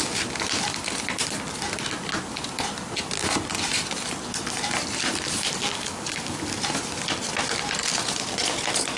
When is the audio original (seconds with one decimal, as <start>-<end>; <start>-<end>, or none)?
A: 0.0-5.6; 6.6-9.0